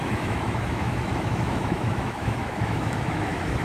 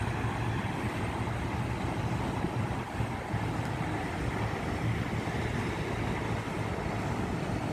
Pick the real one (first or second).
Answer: second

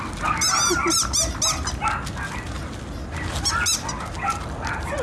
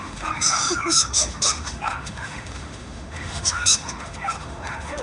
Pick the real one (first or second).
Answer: first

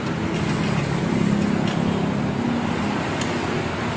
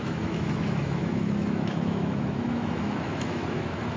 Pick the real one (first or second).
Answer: first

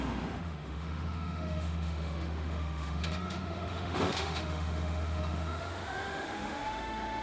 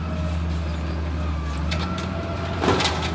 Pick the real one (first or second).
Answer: second